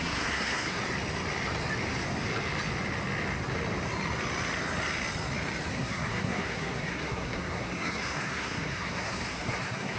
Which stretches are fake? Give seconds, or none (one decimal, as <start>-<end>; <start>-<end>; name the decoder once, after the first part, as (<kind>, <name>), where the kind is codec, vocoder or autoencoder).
0.0-0.8 (codec, SNAC); 5.7-10.0

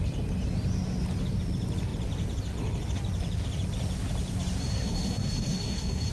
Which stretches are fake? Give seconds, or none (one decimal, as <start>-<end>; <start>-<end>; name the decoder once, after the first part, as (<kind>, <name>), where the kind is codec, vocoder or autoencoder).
4.6-6.1 (codec, SNAC)

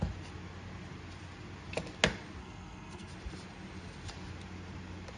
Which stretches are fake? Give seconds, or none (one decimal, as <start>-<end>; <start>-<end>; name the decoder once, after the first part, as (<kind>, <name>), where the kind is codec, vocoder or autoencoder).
2.4-3.1 (codec, SNAC)